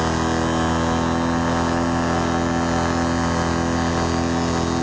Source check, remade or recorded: recorded